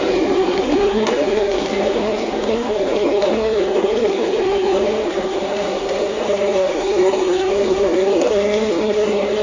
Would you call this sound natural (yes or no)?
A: no